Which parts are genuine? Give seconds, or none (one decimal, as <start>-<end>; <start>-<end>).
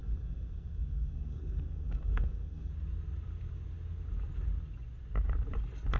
2.7-6.0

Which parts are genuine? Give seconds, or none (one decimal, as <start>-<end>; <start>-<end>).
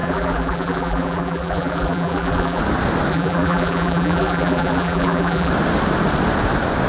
2.6-3.1; 5.5-6.9